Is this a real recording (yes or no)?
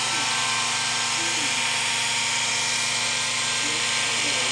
yes